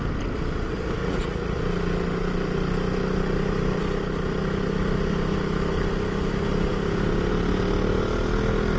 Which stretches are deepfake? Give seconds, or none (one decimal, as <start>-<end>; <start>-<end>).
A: 1.0-1.6